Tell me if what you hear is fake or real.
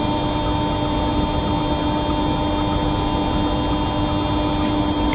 real